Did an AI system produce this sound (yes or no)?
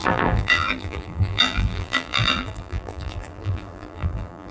yes